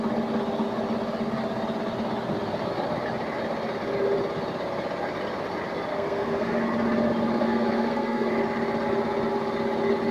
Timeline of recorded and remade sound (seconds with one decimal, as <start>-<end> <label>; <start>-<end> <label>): 0.0-5.9 recorded; 5.9-6.6 remade; 6.6-7.4 recorded; 7.4-8.3 remade; 8.3-10.1 recorded